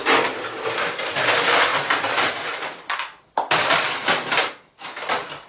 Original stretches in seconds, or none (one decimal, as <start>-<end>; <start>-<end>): 0.0-5.5